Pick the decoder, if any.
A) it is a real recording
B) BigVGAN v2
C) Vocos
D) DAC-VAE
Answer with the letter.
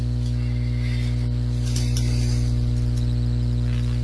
A